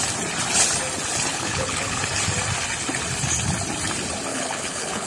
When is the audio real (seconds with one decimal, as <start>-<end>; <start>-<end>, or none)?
0.0-1.3; 2.0-4.3